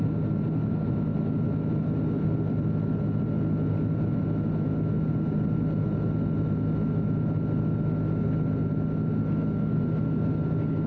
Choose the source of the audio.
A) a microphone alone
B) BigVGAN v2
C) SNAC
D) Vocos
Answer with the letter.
A